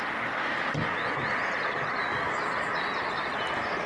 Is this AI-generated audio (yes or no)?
no